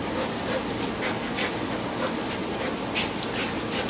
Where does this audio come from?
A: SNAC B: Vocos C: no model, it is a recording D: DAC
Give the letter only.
C